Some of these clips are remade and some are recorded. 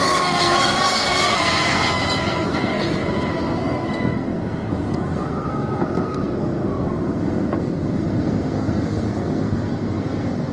remade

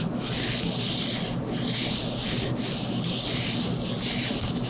recorded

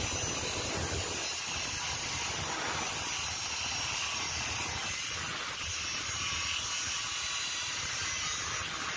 recorded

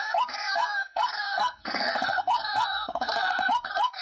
remade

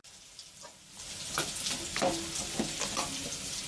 recorded